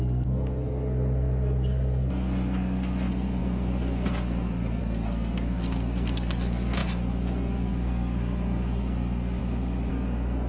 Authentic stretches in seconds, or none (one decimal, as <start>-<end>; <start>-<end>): 9.4-9.9